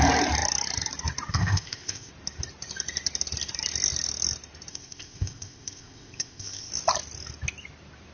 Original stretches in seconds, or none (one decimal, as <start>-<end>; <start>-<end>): 0.0-1.3; 2.1-4.7; 6.7-8.1